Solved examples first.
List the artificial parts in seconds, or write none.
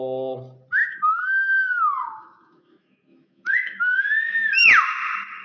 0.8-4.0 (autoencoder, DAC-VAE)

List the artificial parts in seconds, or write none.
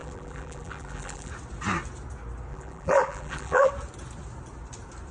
0.0-1.3 (vocoder, BigVGAN v2); 2.5-3.7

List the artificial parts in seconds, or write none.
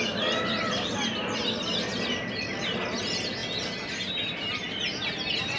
none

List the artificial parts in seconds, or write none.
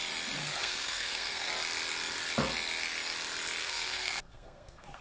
0.4-1.5 (codec, SNAC); 3.6-5.0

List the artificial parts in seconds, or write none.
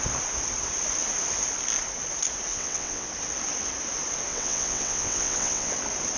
2.5-3.1 (vocoder, WaveNeXt); 4.3-5.7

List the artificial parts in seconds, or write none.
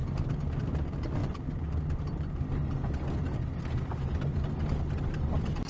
none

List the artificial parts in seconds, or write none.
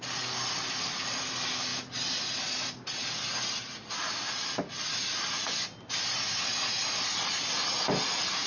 none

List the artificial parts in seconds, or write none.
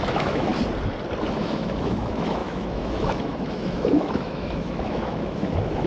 0.0-0.5 (autoencoder, DAC-VAE); 1.4-5.9